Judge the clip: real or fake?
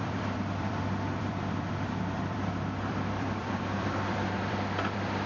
fake